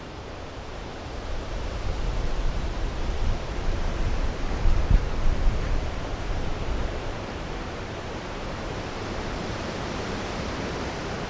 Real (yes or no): no